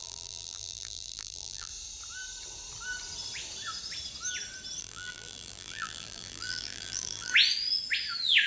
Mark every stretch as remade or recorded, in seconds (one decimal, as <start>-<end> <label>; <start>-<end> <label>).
0.0-1.7 remade; 1.7-4.8 recorded; 4.8-7.3 remade; 7.3-8.5 recorded